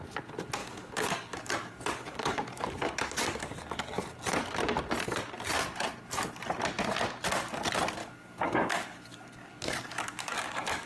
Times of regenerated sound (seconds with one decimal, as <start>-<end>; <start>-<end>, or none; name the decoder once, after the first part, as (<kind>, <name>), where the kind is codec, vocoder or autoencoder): 0.6-4.1 (codec, DAC); 8.0-10.9